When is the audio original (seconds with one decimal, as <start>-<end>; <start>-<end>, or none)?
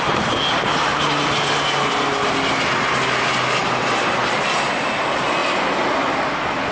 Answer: 0.0-3.6; 4.4-5.4; 6.3-6.7